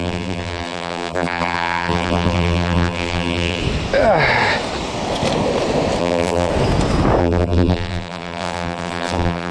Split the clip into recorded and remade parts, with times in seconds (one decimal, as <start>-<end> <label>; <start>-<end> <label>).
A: 0.0-3.6 remade; 3.6-6.0 recorded; 6.0-6.5 remade; 6.5-7.2 recorded; 7.2-9.5 remade